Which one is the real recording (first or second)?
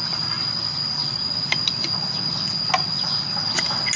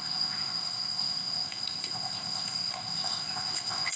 first